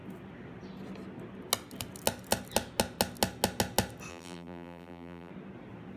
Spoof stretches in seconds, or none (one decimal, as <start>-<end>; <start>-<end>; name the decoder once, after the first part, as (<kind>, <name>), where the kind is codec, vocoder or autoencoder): 4.1-5.3 (vocoder, BigVGAN v2)